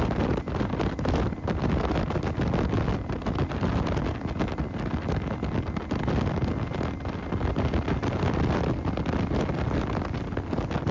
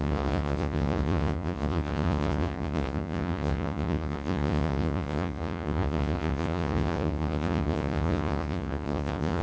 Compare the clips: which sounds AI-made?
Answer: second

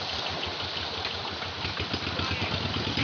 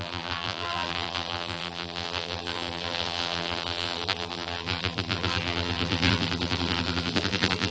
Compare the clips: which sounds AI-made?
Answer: second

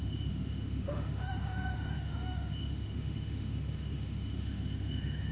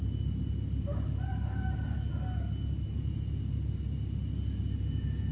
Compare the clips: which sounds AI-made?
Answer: first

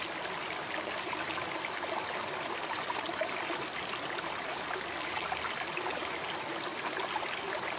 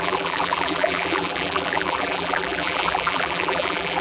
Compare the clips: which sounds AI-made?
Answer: second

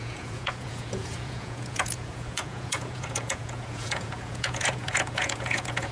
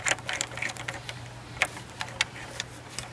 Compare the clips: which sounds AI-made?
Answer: first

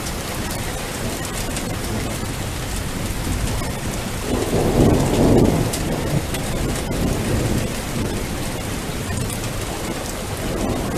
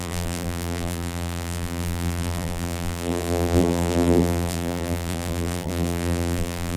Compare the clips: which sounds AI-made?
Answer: second